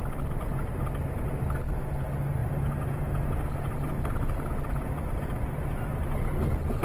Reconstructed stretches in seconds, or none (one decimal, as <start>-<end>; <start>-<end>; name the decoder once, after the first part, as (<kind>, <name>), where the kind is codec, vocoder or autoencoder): none